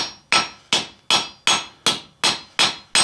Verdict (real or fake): real